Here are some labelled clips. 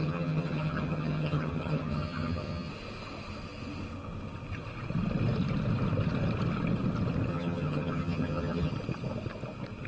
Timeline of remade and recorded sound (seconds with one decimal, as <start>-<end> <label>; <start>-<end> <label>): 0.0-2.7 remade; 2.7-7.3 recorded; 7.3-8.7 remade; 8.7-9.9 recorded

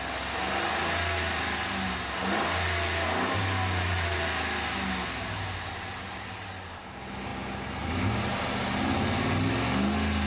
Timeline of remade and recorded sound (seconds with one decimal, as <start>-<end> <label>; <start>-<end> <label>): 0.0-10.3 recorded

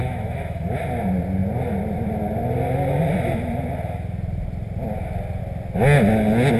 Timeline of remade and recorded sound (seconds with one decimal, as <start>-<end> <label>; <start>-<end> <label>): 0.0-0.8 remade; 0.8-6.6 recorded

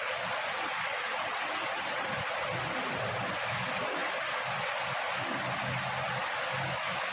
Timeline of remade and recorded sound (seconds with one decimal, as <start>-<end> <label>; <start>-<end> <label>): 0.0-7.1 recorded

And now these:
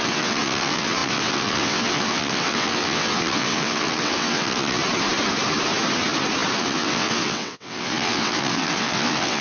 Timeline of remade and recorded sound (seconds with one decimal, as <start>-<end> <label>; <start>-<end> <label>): 0.0-4.8 remade; 4.8-6.6 recorded; 6.6-9.4 remade

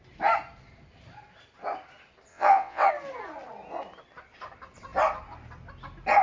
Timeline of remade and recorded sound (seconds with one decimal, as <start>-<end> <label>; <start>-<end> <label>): 0.0-2.3 recorded; 2.3-2.9 remade; 2.9-6.2 recorded

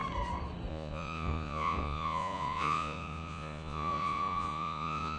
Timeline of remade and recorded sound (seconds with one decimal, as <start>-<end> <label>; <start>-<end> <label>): 0.0-0.7 recorded; 0.7-5.2 remade